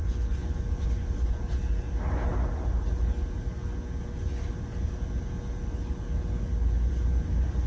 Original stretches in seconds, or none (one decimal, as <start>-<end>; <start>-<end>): 0.0-7.7